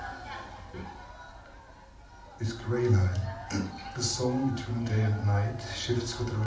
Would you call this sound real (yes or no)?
yes